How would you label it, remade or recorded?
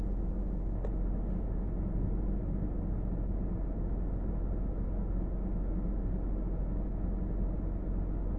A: recorded